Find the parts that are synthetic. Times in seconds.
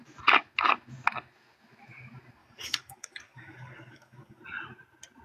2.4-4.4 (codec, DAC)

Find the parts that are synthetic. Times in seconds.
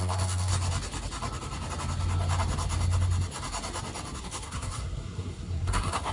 0.0-0.5 (codec, SNAC); 4.2-6.1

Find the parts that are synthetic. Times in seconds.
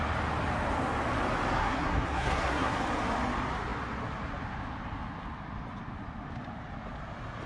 1.6-2.8 (codec, SNAC)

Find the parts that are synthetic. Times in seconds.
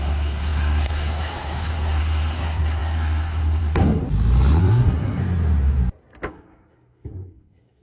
0.0-4.0 (codec, SNAC); 4.6-5.2; 6.3-7.8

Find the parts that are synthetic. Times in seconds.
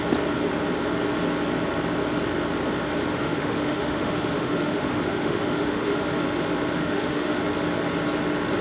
3.1-6.0 (autoencoder, DAC-VAE); 6.8-7.4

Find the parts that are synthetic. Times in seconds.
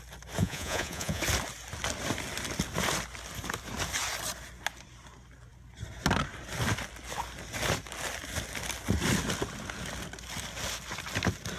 0.4-1.2 (vocoder, Vocos)